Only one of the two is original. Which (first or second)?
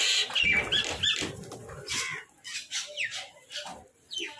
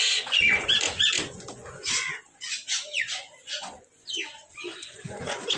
first